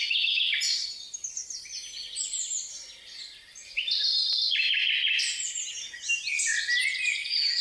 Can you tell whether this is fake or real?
real